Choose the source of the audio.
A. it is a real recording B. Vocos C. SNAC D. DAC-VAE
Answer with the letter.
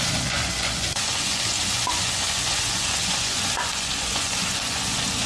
B